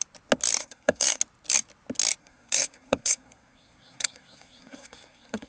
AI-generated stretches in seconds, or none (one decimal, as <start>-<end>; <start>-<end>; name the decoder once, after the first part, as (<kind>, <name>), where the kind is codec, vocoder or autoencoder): 0.6-1.2 (codec, SNAC); 2.2-5.5